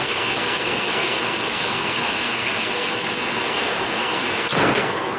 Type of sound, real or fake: fake